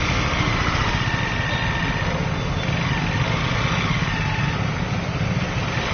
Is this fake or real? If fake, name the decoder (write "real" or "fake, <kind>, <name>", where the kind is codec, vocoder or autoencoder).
real